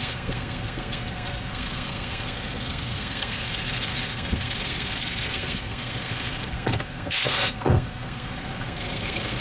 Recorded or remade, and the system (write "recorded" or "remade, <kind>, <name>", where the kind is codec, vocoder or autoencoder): remade, codec, SNAC